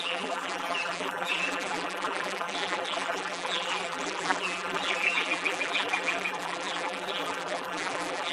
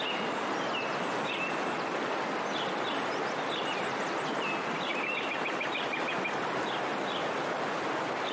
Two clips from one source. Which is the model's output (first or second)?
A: first